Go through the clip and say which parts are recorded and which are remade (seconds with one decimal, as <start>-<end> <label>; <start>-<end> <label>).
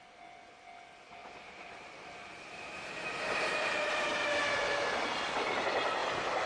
0.0-1.2 recorded; 1.2-4.3 remade; 4.3-6.5 recorded